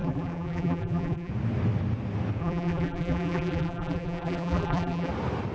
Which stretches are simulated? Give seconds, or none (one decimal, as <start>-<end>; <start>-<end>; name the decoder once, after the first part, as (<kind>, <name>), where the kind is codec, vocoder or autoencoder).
0.0-1.3 (vocoder, BigVGAN v2); 2.4-5.1